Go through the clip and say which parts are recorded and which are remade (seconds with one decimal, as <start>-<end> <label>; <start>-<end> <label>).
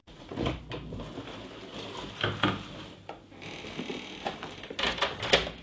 0.0-0.6 remade; 0.6-5.6 recorded